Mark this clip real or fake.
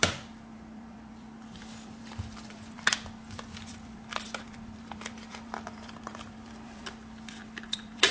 fake